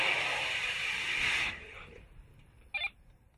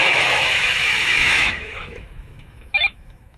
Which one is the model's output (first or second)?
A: second